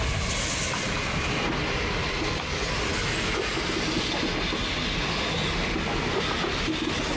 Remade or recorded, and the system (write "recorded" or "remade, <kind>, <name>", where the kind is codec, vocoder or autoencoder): recorded